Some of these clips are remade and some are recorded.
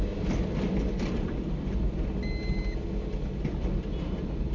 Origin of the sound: recorded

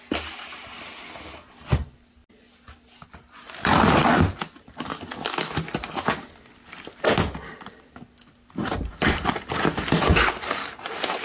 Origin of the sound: recorded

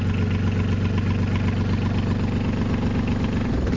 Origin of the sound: recorded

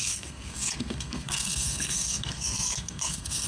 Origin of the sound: remade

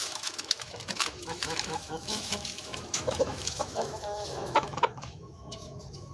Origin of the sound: remade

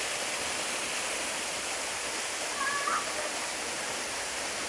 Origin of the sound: recorded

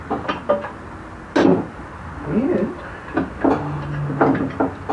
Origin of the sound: recorded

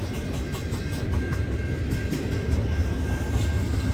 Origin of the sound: recorded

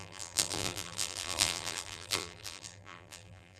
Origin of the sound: remade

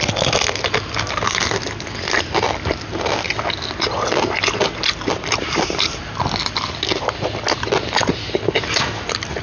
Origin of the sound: recorded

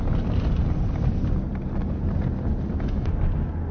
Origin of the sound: recorded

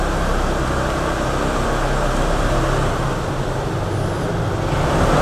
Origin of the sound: recorded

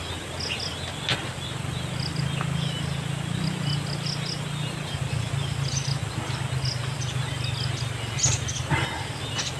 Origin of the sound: recorded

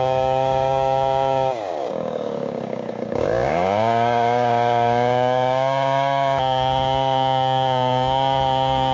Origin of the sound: remade